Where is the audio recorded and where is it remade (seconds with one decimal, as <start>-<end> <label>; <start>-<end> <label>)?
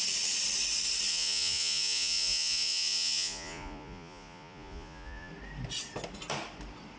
0.0-1.1 recorded; 1.1-5.3 remade; 5.3-7.0 recorded